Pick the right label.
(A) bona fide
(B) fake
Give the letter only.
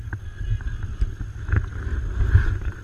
A